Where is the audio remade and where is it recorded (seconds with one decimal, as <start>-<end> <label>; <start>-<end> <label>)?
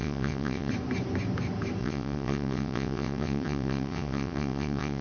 0.0-0.7 remade; 0.7-1.8 recorded; 1.8-5.0 remade